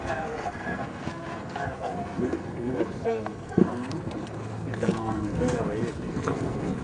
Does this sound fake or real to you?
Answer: fake